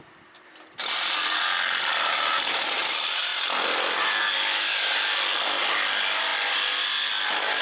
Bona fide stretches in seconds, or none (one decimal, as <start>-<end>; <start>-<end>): 0.0-7.6